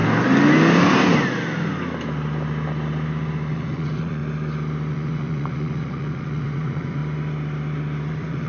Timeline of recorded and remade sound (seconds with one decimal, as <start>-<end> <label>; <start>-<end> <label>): 0.0-3.5 recorded; 3.5-4.2 remade; 4.2-4.9 recorded; 4.9-7.0 remade; 7.0-8.1 recorded; 8.1-8.5 remade